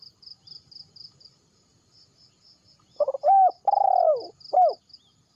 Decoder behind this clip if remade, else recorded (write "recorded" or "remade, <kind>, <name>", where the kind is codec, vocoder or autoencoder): recorded